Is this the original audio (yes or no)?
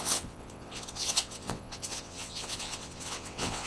no